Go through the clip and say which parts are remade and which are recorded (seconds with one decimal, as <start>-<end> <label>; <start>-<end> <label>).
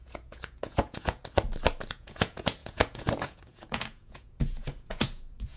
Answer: 0.0-1.2 remade; 1.2-1.9 recorded; 1.9-5.6 remade